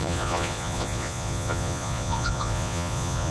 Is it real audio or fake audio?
fake